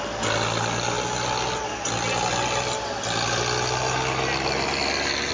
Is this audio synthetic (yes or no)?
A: no